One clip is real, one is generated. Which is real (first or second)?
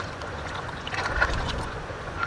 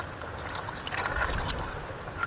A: second